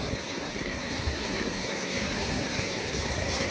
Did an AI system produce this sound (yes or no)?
yes